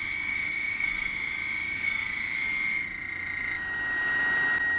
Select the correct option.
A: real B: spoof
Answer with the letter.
A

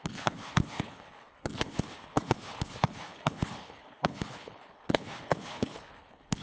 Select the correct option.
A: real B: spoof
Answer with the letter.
B